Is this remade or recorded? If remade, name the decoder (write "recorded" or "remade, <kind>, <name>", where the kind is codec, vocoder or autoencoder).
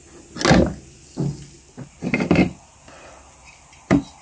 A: recorded